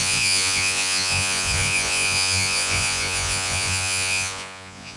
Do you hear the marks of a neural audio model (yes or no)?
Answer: yes